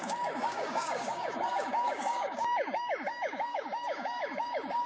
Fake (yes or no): yes